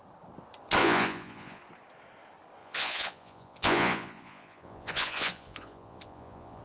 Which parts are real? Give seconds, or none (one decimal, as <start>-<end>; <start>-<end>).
0.0-0.8; 1.6-2.6